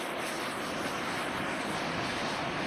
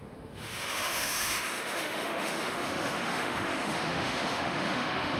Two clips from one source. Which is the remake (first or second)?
second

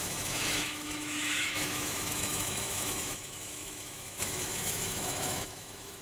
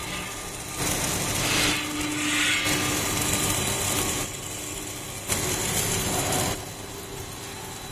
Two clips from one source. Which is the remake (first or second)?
first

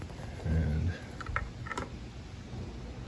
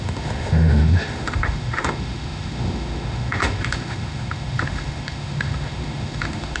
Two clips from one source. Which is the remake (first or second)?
second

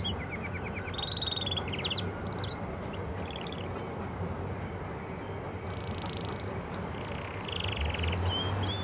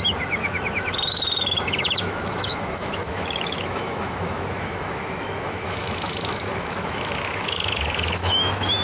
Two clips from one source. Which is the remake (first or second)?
second